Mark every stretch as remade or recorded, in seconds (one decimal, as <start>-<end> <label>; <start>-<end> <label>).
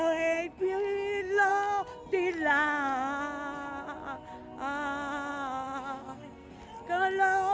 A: 0.0-6.0 recorded; 6.0-6.5 remade; 6.5-7.5 recorded